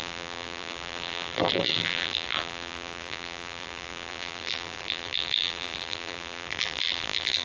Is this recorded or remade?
remade